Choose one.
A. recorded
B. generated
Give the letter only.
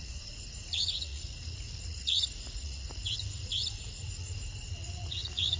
B